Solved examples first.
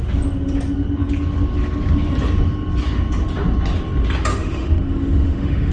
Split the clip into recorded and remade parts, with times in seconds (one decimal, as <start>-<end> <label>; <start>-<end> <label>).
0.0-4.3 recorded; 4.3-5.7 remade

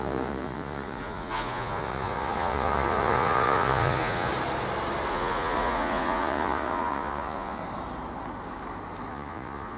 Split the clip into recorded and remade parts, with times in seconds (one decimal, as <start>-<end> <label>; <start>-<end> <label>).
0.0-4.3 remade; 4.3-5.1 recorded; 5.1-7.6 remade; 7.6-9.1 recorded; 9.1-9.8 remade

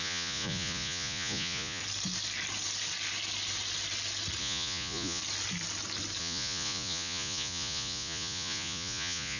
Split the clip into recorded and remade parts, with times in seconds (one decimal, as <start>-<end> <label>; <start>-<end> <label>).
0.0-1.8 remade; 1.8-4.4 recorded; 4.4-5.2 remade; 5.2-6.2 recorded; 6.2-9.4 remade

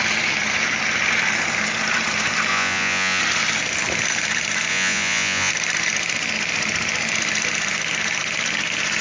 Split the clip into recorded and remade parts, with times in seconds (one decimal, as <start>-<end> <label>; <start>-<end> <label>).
0.0-2.5 recorded; 2.5-3.2 remade; 3.2-4.7 recorded; 4.7-5.5 remade; 5.5-9.0 recorded

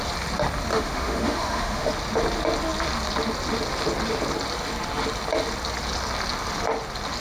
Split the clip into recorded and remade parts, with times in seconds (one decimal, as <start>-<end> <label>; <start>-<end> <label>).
0.0-0.7 recorded; 0.7-1.9 remade; 1.9-7.2 recorded